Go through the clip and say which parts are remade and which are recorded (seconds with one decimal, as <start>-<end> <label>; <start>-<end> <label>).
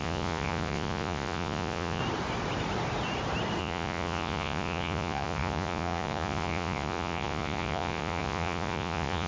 0.0-2.0 remade; 2.0-3.6 recorded; 3.6-9.3 remade